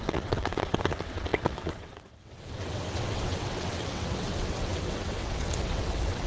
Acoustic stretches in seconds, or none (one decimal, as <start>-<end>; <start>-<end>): none